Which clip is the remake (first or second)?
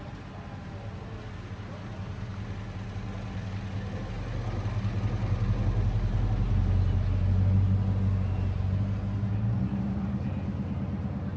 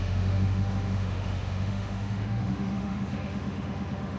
second